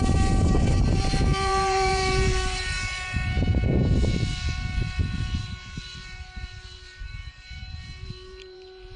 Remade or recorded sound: remade